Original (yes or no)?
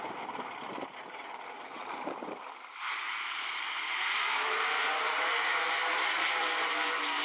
no